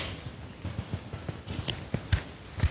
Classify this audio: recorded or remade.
recorded